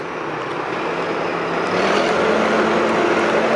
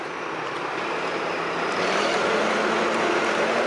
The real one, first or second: first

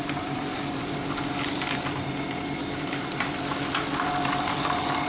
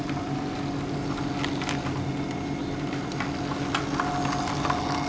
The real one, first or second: second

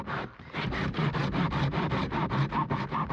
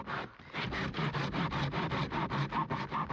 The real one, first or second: second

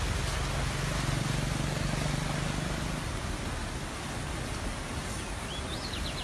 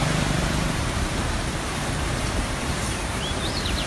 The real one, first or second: first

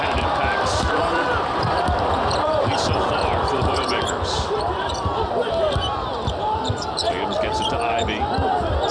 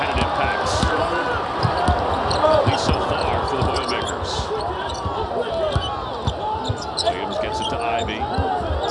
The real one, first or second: second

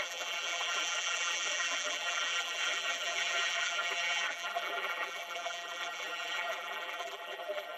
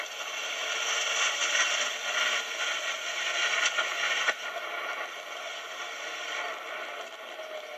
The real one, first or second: second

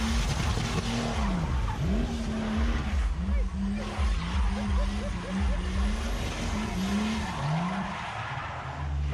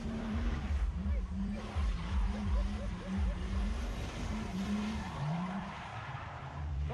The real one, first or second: first